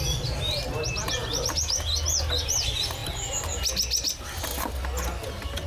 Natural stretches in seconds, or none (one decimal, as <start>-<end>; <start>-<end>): 0.0-5.7